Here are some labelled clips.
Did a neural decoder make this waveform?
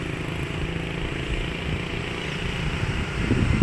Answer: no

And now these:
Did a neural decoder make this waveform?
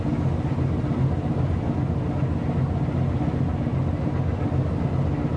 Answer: no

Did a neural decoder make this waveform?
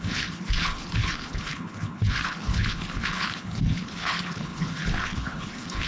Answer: yes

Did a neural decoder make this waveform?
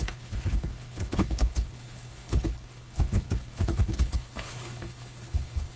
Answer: yes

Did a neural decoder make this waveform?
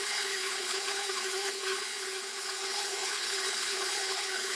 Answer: yes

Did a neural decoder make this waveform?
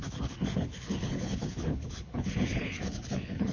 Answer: yes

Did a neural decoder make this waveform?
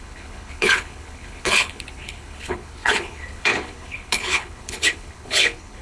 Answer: yes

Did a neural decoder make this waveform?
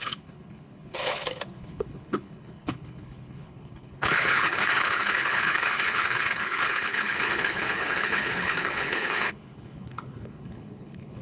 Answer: yes